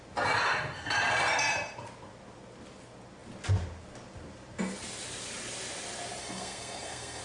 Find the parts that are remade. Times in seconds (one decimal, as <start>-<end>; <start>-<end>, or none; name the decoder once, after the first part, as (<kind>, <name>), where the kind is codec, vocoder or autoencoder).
6.2-7.2 (codec, SNAC)